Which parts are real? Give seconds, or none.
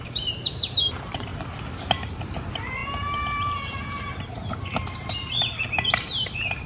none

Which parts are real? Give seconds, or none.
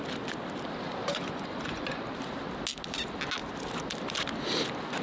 0.0-1.0; 2.0-5.0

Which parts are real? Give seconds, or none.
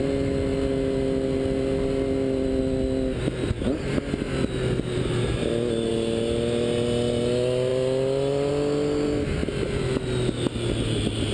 0.0-7.7; 8.5-9.4; 10.0-11.3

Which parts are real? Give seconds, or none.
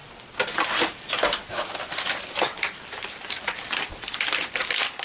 0.0-2.5; 4.1-5.0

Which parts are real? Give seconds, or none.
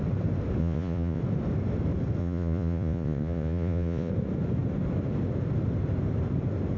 0.0-0.6; 1.2-2.2; 4.1-6.8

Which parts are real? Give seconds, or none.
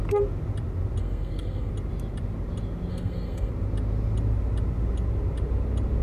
0.0-1.0; 1.7-2.9; 3.5-6.0